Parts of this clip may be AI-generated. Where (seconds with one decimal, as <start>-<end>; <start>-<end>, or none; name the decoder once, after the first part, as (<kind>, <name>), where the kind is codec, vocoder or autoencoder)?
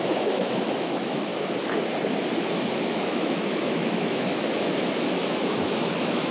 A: 0.0-1.3 (autoencoder, DAC-VAE); 2.4-6.3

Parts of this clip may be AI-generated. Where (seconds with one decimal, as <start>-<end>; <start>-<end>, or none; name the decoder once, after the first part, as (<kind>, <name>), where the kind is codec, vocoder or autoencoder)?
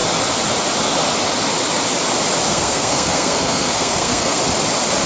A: 2.5-4.4 (codec, SNAC)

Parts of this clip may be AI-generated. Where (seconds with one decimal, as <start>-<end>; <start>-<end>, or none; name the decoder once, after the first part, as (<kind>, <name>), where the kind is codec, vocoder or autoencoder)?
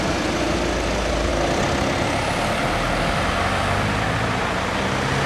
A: none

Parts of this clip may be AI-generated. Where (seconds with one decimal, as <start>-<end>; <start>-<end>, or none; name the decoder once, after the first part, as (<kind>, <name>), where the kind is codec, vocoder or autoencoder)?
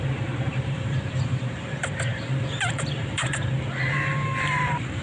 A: 0.0-5.0 (vocoder, BigVGAN v2)